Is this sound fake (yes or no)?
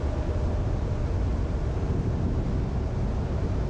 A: no